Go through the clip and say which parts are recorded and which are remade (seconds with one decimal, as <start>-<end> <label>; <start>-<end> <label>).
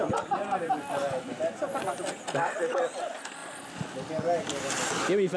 0.0-5.4 recorded